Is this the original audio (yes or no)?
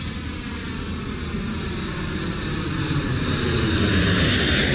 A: yes